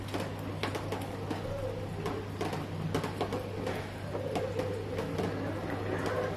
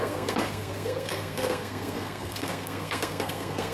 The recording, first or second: first